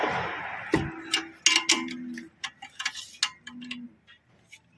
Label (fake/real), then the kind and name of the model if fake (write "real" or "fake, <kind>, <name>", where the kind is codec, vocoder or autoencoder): real